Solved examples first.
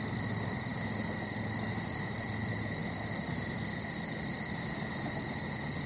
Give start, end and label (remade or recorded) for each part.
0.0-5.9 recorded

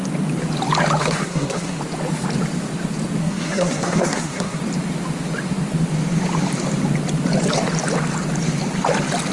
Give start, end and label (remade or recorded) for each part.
0.0-1.0 recorded; 1.0-1.8 remade; 1.8-3.2 recorded; 3.2-4.6 remade; 4.6-9.3 recorded

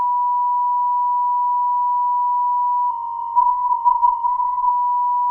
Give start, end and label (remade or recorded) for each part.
0.0-2.9 recorded; 2.9-4.7 remade; 4.7-5.3 recorded

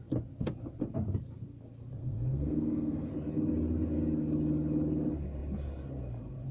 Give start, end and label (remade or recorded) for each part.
0.0-2.0 recorded; 2.0-3.1 remade; 3.1-6.5 recorded